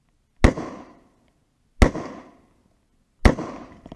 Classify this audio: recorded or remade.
recorded